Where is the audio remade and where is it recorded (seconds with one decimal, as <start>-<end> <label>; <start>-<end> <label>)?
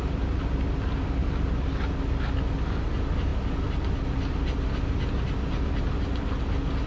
0.0-6.9 recorded